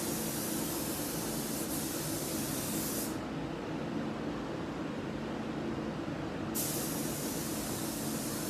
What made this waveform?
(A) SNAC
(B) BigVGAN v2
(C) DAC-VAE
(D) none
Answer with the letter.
D